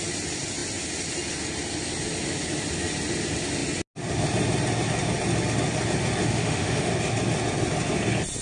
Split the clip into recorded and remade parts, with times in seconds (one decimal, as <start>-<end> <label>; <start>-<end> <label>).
0.0-6.2 recorded; 6.2-6.9 remade; 6.9-8.4 recorded